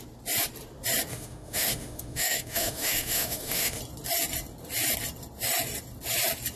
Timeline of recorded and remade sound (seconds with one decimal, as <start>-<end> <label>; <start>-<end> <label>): 0.0-1.1 recorded; 1.1-3.8 remade; 3.8-6.6 recorded